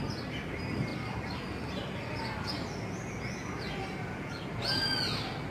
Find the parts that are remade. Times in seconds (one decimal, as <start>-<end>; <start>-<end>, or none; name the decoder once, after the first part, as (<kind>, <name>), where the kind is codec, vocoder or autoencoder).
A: none